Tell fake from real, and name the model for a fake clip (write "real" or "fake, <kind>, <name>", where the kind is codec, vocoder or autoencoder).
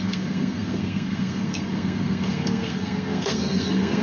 fake, codec, SNAC